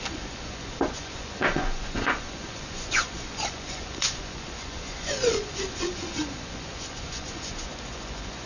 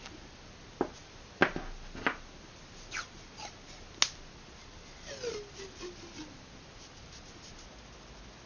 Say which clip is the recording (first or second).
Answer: second